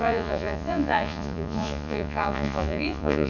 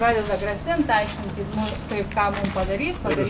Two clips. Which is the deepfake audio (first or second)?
first